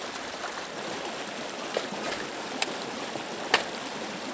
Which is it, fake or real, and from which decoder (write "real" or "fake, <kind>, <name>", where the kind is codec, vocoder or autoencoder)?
real